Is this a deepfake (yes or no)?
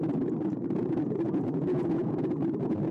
yes